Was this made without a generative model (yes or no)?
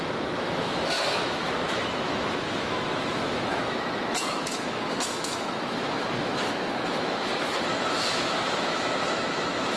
no